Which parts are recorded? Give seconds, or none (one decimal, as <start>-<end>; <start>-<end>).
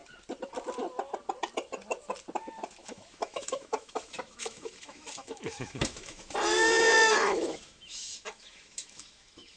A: 0.0-2.8; 6.2-7.2